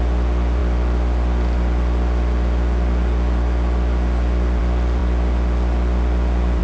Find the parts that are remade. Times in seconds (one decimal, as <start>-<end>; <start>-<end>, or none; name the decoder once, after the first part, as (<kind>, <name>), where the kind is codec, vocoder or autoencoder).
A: none